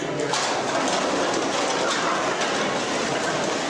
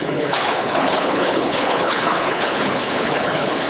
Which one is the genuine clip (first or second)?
first